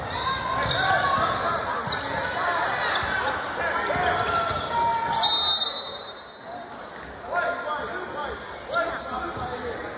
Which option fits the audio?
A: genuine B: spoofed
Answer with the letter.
A